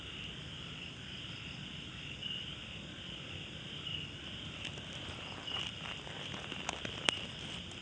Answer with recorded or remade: recorded